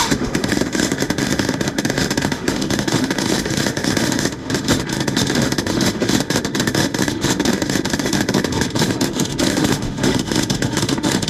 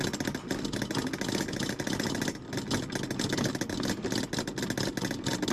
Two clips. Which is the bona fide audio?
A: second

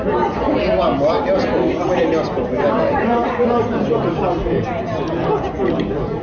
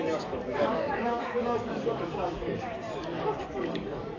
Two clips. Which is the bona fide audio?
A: first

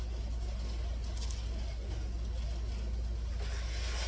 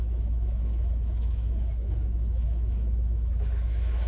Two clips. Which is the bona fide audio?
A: first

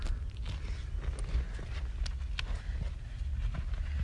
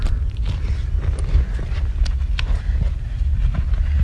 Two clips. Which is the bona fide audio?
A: first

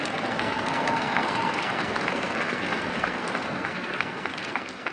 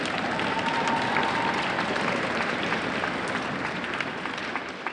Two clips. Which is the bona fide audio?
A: second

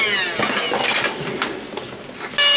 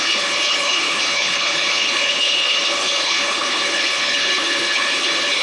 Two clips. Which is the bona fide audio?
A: first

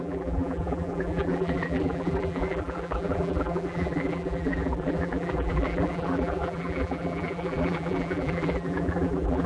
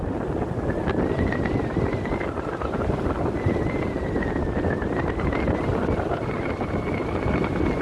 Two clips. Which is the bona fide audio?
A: second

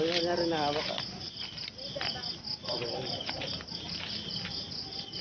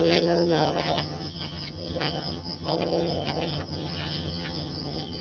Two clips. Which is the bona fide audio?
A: first